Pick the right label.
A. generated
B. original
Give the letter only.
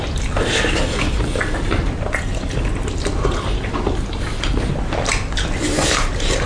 A